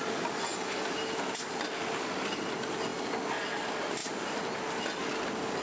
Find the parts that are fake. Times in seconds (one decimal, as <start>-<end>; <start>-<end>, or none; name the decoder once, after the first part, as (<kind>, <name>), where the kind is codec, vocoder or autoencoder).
0.0-0.5 (vocoder, BigVGAN v2); 1.9-4.0